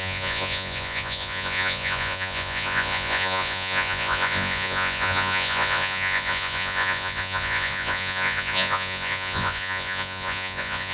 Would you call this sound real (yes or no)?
no